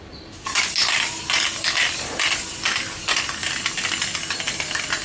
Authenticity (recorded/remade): recorded